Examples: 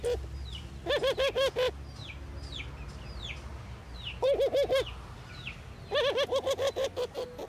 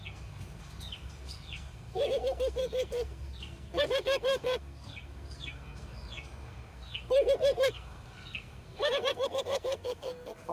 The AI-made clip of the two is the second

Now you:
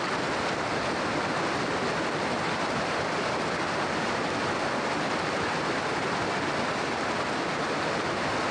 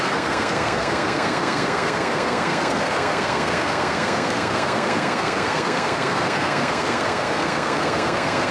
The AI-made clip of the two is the second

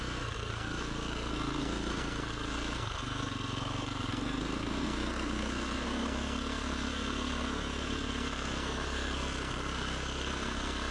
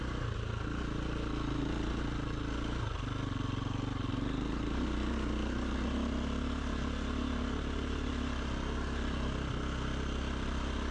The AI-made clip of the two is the first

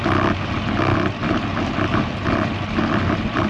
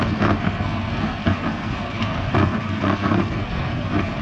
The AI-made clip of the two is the second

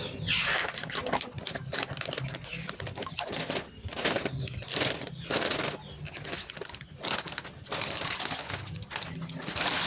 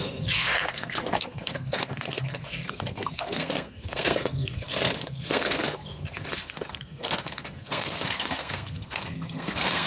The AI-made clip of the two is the second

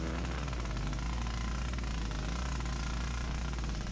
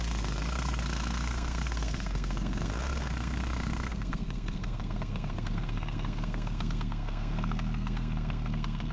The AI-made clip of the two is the second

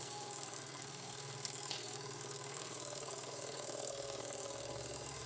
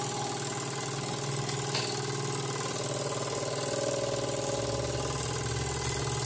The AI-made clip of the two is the first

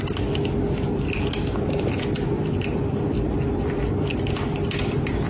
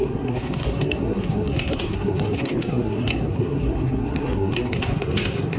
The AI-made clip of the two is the second